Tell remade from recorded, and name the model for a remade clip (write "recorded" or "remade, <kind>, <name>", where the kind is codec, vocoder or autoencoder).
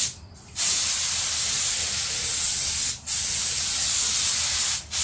recorded